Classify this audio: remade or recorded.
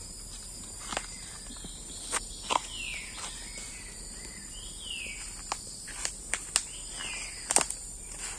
recorded